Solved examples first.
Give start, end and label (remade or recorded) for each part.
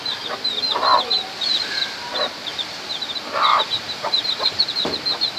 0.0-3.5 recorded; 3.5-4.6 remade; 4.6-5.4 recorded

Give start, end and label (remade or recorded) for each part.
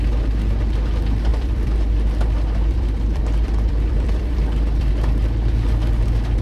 0.0-1.3 recorded; 1.3-4.9 remade; 4.9-6.4 recorded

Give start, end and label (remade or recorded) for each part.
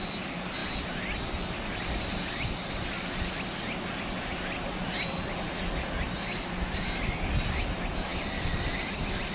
0.0-9.3 recorded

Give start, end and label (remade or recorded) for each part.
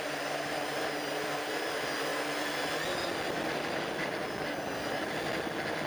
0.0-5.9 recorded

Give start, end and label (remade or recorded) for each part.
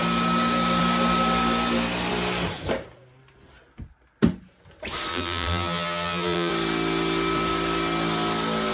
0.0-5.1 recorded; 5.1-6.5 remade; 6.5-8.7 recorded